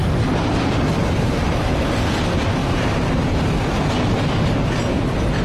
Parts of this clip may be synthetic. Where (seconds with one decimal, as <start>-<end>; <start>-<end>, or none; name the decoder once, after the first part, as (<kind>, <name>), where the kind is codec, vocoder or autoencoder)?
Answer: 0.0-1.9 (vocoder, BigVGAN v2); 2.6-3.1